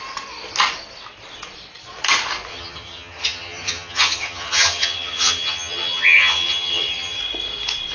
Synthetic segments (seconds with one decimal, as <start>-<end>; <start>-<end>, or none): 2.5-7.2